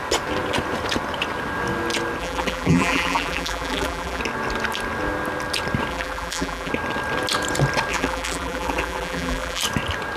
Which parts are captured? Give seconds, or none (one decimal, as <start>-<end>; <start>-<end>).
0.0-2.2; 4.2-5.9; 6.7-7.9; 9.6-10.2